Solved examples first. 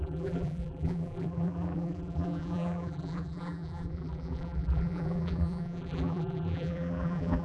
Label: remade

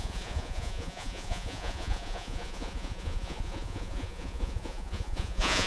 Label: remade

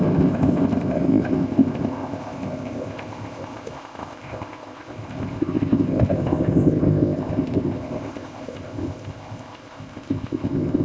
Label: remade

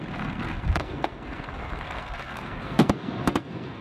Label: remade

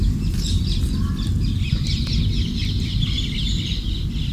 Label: recorded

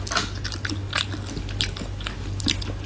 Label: recorded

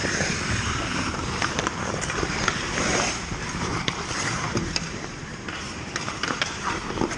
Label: remade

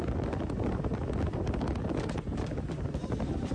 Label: recorded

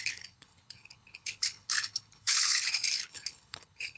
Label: remade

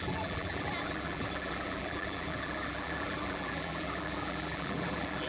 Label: remade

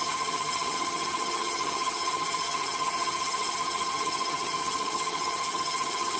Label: remade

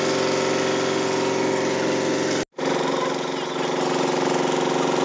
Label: recorded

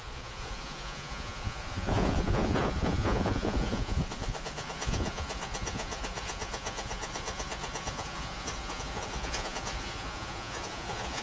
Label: remade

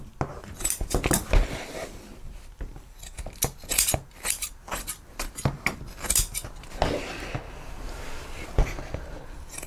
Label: recorded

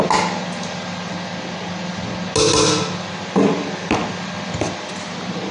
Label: recorded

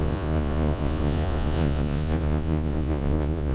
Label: remade